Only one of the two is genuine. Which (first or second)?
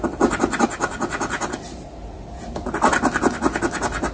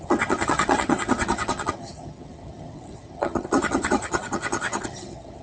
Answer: first